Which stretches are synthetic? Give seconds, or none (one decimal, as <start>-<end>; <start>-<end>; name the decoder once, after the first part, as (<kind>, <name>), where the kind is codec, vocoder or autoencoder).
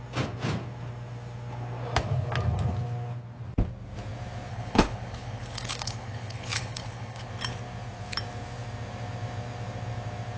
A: 4.5-7.3 (codec, HILCodec)